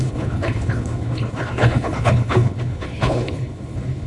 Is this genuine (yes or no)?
no